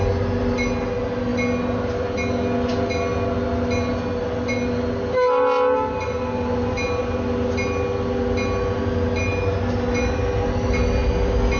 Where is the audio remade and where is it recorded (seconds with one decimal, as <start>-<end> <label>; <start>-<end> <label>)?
0.0-11.6 recorded